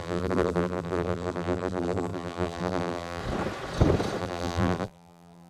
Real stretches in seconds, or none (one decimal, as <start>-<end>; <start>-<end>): 3.2-4.2